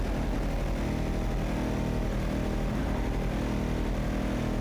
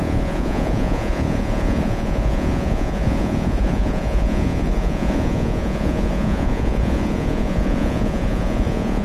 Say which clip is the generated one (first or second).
second